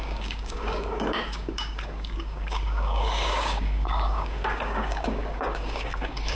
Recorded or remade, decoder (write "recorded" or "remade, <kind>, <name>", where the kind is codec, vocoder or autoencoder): remade, codec, DAC